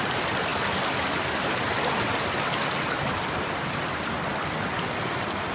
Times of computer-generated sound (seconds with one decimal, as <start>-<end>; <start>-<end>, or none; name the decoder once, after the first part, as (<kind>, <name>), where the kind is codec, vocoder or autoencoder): none